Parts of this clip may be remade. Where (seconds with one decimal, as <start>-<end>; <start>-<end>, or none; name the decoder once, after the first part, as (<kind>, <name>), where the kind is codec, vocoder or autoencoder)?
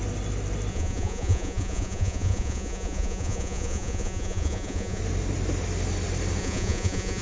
0.7-5.0 (vocoder, Vocos); 6.4-7.2